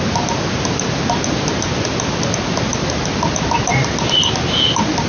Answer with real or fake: real